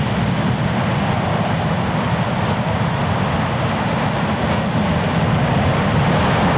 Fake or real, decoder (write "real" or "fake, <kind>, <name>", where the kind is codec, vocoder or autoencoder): real